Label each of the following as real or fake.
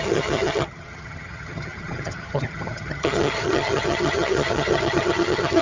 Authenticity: fake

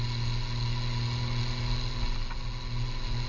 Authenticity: real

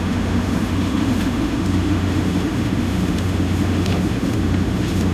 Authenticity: fake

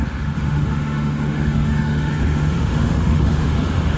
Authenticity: fake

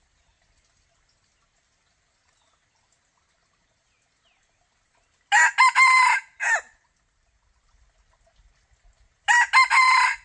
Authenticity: real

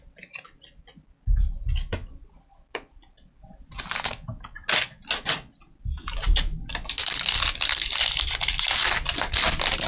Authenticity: real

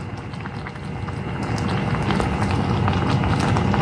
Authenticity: real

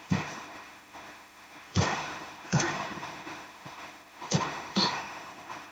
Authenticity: fake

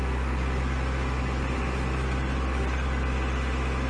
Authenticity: real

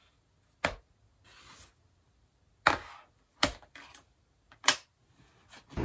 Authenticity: real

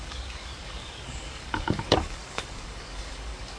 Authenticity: fake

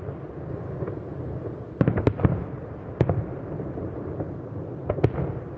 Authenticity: real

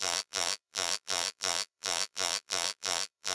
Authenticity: fake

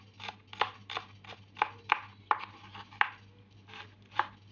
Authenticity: real